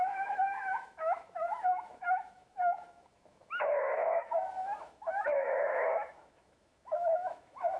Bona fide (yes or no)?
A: no